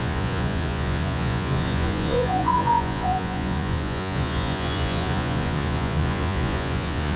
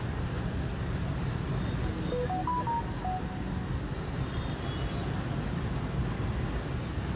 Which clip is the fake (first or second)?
first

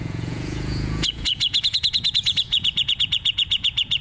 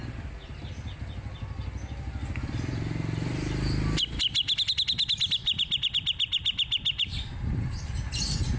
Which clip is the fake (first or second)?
first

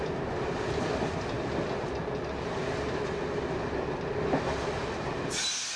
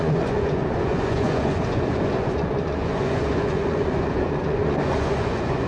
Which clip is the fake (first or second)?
second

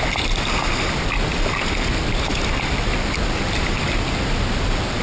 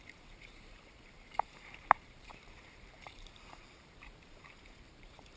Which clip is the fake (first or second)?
second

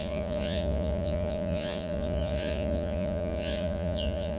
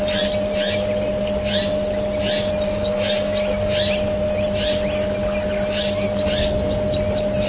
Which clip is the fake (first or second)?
first